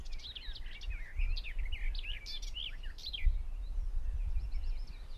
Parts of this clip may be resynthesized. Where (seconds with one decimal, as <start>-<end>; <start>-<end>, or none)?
3.7-5.2